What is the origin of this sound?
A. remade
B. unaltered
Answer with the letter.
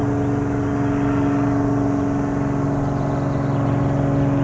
B